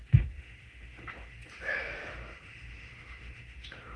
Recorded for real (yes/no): no